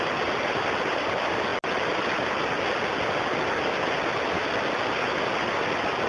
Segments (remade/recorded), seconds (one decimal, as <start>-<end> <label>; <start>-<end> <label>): 0.0-6.1 recorded